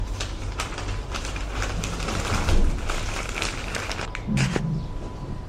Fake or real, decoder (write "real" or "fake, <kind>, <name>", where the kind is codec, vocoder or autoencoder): real